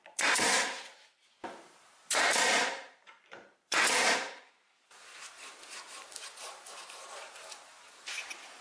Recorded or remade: remade